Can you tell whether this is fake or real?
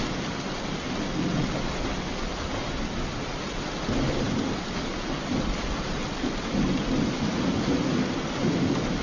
real